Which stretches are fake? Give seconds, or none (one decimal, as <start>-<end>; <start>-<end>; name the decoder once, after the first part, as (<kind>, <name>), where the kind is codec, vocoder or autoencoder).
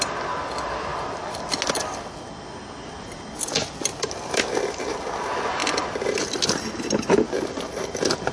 none